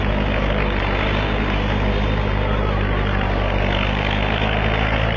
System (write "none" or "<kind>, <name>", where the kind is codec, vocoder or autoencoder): none